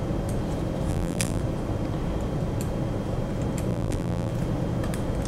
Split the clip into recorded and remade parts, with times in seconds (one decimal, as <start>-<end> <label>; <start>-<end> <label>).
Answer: 0.0-0.9 recorded; 0.9-1.4 remade; 1.4-3.7 recorded; 3.7-4.3 remade; 4.3-5.3 recorded